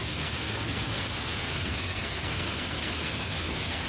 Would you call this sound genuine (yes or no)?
no